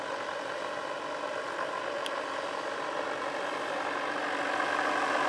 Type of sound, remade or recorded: recorded